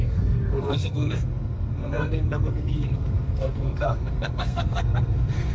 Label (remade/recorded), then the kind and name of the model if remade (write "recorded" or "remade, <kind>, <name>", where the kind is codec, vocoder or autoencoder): remade, codec, SNAC